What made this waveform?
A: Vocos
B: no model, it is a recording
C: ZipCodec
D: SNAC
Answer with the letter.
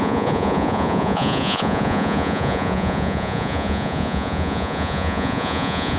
A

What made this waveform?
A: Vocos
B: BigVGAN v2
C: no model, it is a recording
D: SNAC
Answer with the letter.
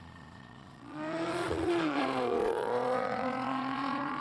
A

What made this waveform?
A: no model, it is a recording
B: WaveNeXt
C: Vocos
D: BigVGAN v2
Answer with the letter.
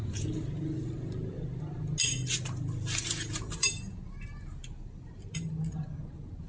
A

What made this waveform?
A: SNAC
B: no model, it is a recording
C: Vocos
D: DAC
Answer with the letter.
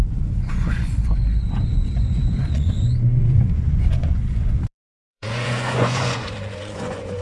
C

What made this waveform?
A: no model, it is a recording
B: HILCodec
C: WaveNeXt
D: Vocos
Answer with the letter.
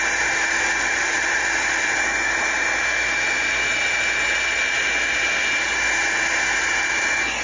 A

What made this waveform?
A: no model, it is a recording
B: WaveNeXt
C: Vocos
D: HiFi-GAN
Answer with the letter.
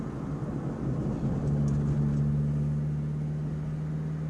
A